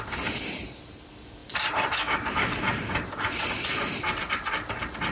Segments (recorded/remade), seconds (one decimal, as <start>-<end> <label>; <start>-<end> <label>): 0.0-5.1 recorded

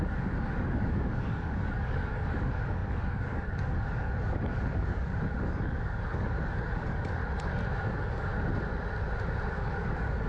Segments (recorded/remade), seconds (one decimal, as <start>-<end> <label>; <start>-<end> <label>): 0.0-7.2 remade; 7.2-7.8 recorded; 7.8-8.3 remade; 8.3-9.5 recorded; 9.5-10.3 remade

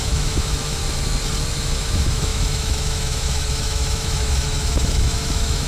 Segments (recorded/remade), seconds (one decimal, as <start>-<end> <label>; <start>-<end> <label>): 0.0-0.8 remade; 0.8-1.6 recorded; 1.6-5.7 remade